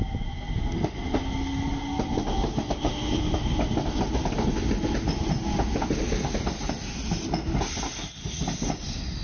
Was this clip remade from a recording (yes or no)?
no